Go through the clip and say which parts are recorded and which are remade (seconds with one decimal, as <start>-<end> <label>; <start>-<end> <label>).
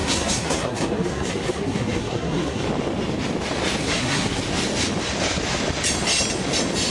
0.0-2.6 remade; 2.6-3.8 recorded; 3.8-4.4 remade; 4.4-6.9 recorded